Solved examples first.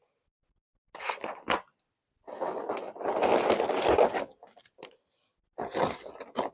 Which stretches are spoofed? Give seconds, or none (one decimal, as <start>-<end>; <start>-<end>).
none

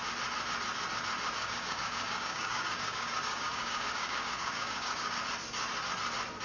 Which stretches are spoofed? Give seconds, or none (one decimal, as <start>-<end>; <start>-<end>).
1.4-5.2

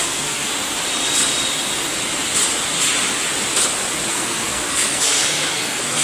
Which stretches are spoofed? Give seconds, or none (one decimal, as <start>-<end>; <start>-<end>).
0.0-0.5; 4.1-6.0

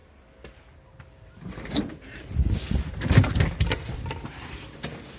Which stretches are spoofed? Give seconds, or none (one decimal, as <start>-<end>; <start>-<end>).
0.0-5.2